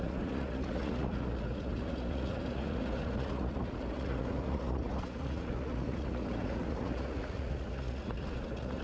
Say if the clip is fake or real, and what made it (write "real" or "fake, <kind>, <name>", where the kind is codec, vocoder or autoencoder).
fake, vocoder, Vocos